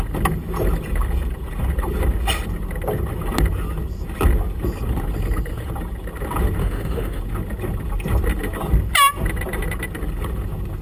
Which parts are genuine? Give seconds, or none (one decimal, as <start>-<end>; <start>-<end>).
0.0-6.6; 7.2-10.8